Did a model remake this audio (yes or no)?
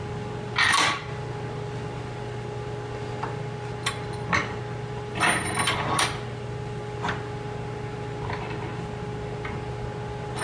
no